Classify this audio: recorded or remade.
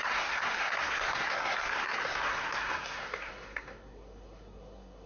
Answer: remade